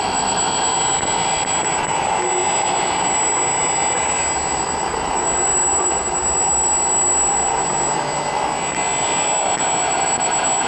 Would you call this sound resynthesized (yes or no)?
no